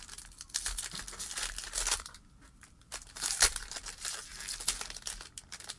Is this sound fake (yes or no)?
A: no